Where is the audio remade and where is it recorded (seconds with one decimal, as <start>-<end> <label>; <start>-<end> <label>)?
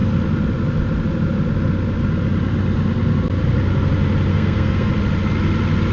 0.0-4.3 recorded; 4.3-4.9 remade; 4.9-5.9 recorded